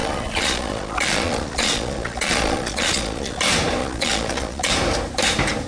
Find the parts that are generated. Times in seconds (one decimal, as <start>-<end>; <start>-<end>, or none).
0.0-3.4; 3.8-4.7